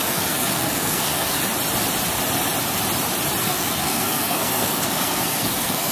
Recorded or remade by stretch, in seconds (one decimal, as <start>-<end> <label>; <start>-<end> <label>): 0.0-1.4 remade; 1.4-3.4 recorded; 3.4-5.9 remade